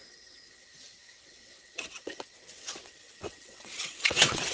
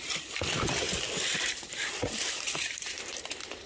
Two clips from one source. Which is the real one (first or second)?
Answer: second